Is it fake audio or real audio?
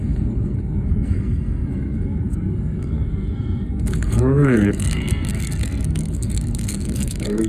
fake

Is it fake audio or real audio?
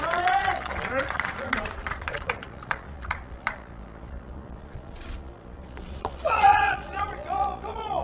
fake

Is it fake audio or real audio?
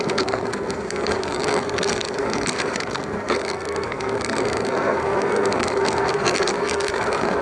fake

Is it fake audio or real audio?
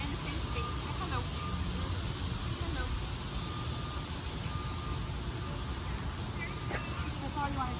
real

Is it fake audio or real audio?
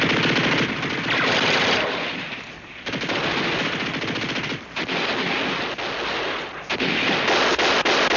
real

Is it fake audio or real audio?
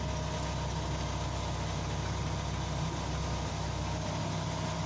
real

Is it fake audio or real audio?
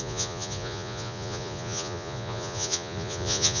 fake